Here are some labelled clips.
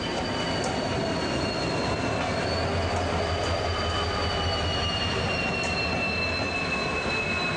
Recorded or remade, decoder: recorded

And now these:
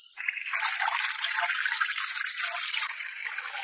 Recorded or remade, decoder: recorded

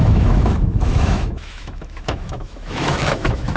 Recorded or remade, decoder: remade, autoencoder, DAC-VAE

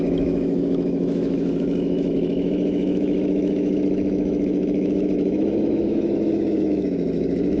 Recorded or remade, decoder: remade, autoencoder, DAC-VAE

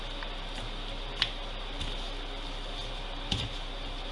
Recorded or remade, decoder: recorded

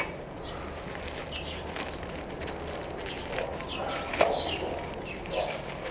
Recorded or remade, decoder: recorded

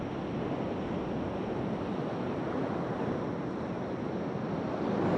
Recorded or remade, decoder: recorded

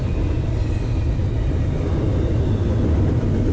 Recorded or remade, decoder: recorded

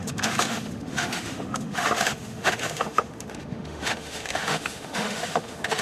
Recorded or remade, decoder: remade, autoencoder, DAC-VAE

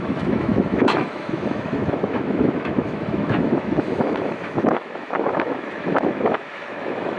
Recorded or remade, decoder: remade, autoencoder, DAC-VAE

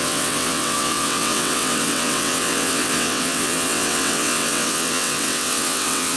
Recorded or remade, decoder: remade, vocoder, WaveNeXt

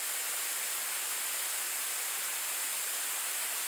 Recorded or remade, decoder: recorded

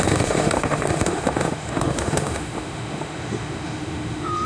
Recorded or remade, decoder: remade, autoencoder, DAC-VAE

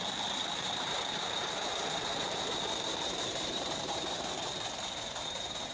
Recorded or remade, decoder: remade, vocoder, BigVGAN v2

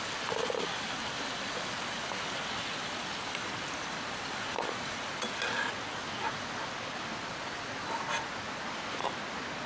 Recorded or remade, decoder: recorded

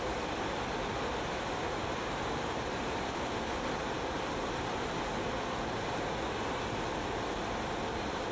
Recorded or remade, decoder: recorded